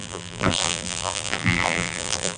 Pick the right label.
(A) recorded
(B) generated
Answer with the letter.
B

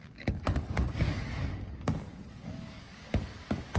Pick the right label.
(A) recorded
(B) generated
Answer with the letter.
B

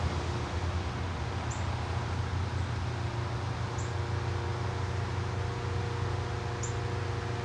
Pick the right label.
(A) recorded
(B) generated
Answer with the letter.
A